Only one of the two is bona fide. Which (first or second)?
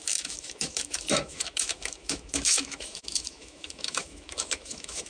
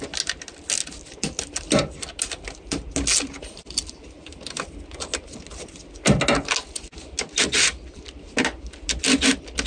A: second